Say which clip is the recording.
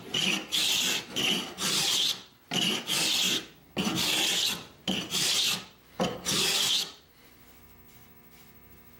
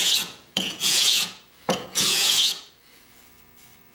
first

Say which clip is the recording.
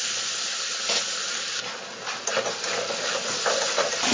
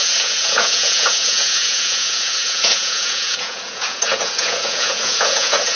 first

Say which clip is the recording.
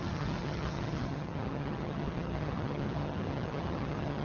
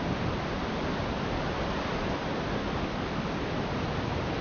second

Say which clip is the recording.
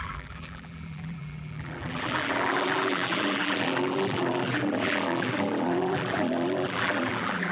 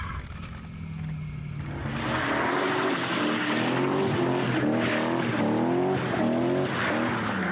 second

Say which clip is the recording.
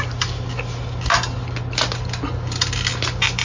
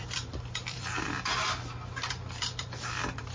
first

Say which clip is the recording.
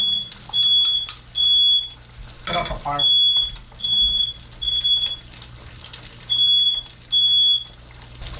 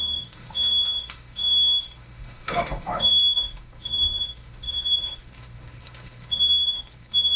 first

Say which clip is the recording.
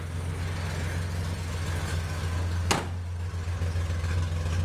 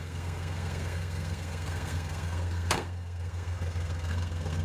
first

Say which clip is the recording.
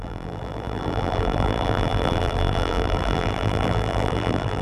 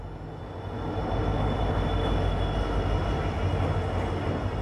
second